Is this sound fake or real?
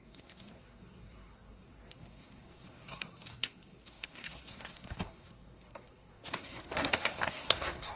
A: fake